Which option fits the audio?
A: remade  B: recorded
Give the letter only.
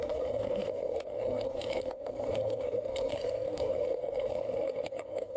A